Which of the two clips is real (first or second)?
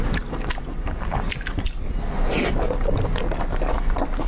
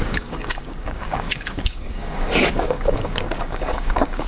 first